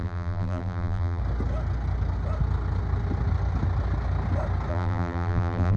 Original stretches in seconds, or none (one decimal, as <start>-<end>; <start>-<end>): 1.2-4.7